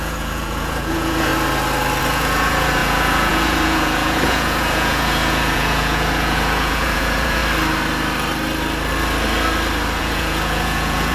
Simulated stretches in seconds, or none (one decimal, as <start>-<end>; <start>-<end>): 0.0-1.3; 2.0-7.4; 10.0-11.1